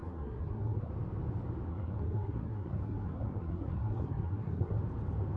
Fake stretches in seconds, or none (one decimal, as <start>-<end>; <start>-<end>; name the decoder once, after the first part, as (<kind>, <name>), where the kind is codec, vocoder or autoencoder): 0.0-0.9 (codec, SNAC); 1.7-4.8